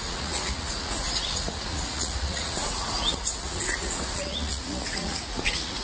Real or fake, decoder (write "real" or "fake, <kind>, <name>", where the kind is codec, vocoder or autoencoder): fake, vocoder, Vocos